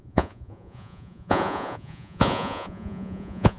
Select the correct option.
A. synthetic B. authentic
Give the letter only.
A